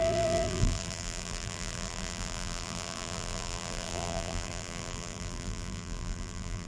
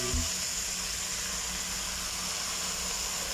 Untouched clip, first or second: second